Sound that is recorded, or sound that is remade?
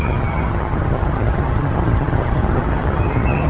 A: remade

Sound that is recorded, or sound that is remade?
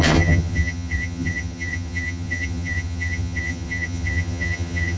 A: remade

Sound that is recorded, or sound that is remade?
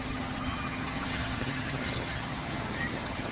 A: remade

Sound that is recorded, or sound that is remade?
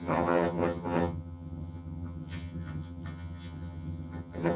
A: remade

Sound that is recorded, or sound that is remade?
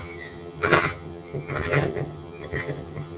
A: remade